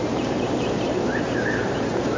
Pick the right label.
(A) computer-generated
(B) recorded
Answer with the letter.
A